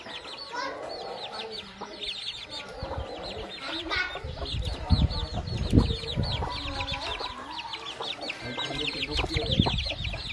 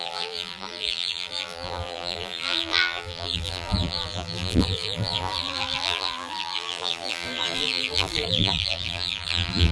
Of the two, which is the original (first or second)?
first